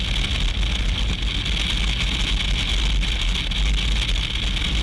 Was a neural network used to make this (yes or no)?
no